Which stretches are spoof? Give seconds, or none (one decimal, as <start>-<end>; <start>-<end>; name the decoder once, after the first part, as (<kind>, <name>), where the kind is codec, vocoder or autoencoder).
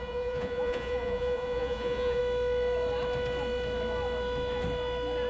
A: 0.0-2.2 (vocoder, Vocos)